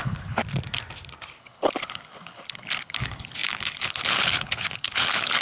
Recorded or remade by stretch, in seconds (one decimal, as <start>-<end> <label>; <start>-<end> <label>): 0.0-0.4 remade; 0.4-1.4 recorded; 1.4-5.4 remade